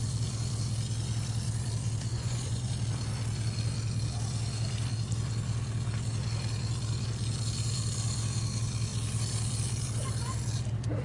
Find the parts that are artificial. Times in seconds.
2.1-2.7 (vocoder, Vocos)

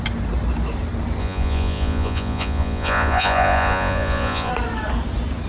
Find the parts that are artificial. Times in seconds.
1.2-4.5 (vocoder, Vocos)

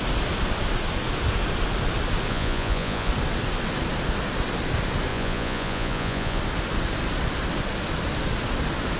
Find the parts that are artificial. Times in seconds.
2.3-3.1 (vocoder, Vocos); 5.1-6.4

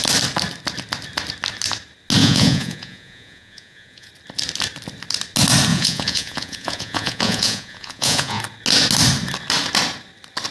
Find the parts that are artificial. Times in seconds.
2.2-4.1 (vocoder, Vocos); 5.7-8.4

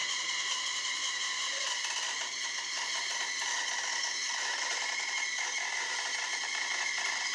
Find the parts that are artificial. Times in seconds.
none

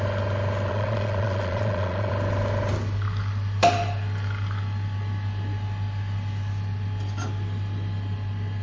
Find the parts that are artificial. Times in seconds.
0.7-2.1 (vocoder, Vocos)

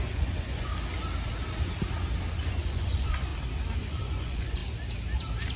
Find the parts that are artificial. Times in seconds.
0.0-0.7 (vocoder, Vocos); 2.5-3.3; 3.8-4.6

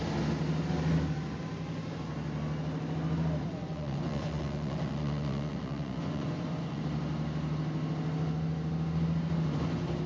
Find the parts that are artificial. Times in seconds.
3.6-6.8 (vocoder, Vocos)